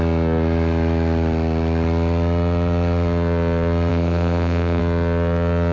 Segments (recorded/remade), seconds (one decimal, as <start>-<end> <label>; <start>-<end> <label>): 0.0-3.9 recorded; 3.9-4.8 remade; 4.8-5.7 recorded